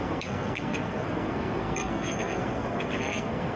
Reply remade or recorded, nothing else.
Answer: remade